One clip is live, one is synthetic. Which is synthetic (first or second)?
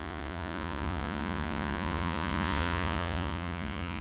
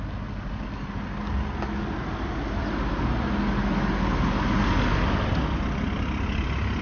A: first